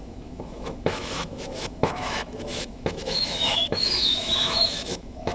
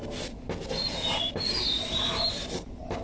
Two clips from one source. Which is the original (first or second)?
second